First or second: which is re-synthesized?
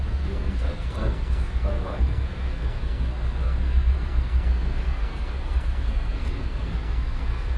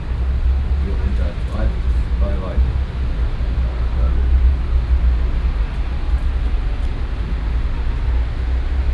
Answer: first